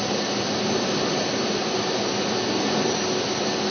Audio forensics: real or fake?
real